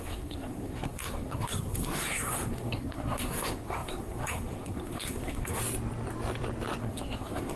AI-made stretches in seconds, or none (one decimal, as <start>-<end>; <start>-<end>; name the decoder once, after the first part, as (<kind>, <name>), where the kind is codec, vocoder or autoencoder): 0.0-5.6 (codec, SNAC); 6.8-7.6